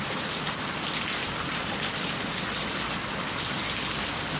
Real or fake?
real